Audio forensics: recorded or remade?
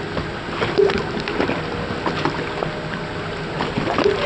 recorded